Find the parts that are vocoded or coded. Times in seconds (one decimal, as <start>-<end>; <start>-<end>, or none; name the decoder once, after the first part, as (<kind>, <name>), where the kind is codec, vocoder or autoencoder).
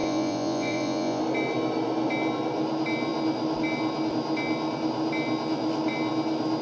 0.0-1.2 (vocoder, Vocos)